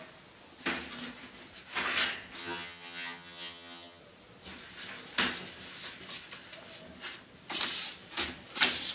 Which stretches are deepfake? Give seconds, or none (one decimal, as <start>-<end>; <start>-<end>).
2.4-4.0